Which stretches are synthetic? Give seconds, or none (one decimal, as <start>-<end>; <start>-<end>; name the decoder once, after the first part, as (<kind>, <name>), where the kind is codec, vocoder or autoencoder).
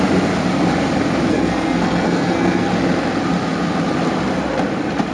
1.3-2.7 (codec, SNAC)